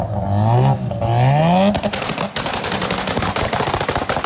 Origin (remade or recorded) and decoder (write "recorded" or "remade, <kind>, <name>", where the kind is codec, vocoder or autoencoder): recorded